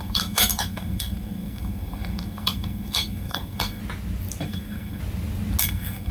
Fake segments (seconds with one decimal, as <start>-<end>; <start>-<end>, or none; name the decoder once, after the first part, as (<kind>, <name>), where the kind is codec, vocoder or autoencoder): 0.0-3.8 (codec, SNAC); 4.4-5.0; 5.6-6.1